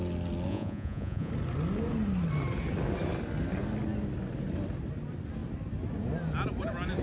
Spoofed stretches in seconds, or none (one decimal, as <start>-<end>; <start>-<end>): 0.5-1.3